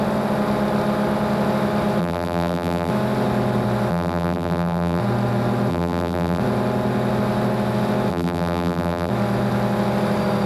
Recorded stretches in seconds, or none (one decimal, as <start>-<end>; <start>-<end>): 0.0-2.0; 2.9-3.9; 5.0-5.7; 6.4-8.1; 9.1-10.5